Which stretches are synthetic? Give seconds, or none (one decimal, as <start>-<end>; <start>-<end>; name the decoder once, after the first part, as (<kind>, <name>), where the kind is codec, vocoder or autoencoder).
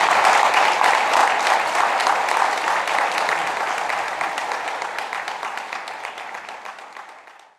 none